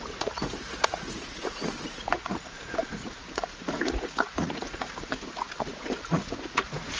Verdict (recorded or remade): remade